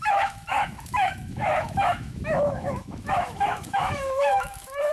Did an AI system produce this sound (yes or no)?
yes